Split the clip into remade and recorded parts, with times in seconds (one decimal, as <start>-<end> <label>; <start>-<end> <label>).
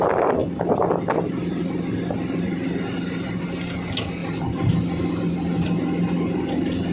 0.0-0.4 recorded; 0.4-1.3 remade; 1.3-4.2 recorded; 4.2-4.7 remade; 4.7-6.9 recorded